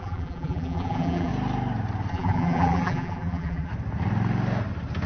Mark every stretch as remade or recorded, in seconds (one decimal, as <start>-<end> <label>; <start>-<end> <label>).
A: 0.0-1.3 remade; 1.3-2.1 recorded; 2.1-3.7 remade; 3.7-5.1 recorded